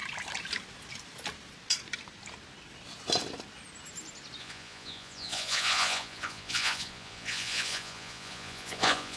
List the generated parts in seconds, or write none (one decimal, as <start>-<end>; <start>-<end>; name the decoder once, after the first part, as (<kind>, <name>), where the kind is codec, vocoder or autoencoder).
4.4-9.2 (vocoder, Vocos)